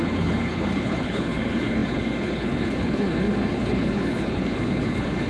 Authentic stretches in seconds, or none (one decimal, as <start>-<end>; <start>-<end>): none

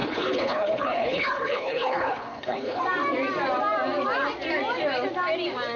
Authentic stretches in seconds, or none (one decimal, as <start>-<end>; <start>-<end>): 2.8-5.8